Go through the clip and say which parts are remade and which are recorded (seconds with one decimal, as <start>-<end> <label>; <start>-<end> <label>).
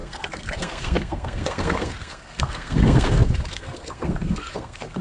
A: 0.0-5.0 remade